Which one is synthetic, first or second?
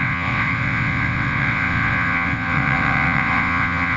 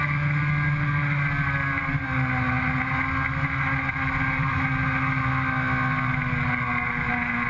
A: first